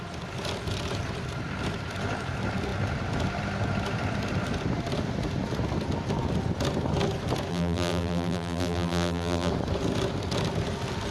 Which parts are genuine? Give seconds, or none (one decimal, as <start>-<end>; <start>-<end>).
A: 0.0-7.5; 9.5-11.1